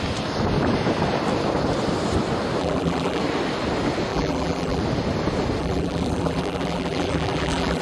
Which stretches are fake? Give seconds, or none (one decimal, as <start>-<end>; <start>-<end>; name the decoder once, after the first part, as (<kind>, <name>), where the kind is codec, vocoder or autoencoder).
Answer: 2.6-3.2 (vocoder, BigVGAN v2); 4.1-4.8; 5.6-7.8

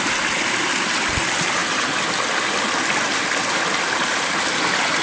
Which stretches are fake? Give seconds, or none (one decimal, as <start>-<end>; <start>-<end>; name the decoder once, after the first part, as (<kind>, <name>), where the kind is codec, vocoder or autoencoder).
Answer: none

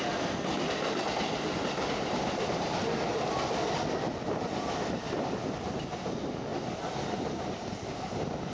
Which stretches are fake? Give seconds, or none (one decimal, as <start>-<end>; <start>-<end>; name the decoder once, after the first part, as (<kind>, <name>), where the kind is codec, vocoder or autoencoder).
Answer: none

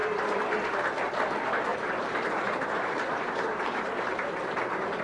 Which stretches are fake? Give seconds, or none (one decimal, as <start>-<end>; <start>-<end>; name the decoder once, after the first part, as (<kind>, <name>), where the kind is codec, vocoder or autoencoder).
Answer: 0.0-0.5 (vocoder, BigVGAN v2); 1.7-5.0

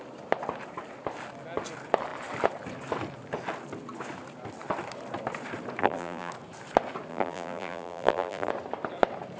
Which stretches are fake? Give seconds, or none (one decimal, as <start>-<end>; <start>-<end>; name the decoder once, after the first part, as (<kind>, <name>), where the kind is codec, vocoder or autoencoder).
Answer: 5.8-6.3 (vocoder, BigVGAN v2); 7.1-8.5